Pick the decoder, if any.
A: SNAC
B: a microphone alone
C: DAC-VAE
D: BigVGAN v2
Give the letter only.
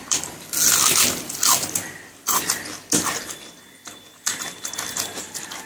B